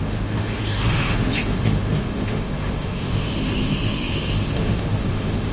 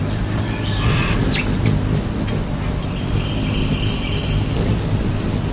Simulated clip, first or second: first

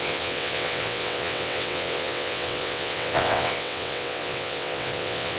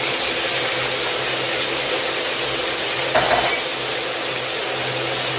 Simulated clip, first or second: first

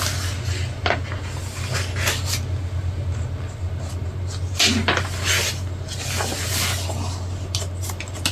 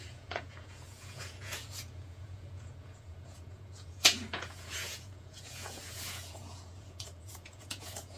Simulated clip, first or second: second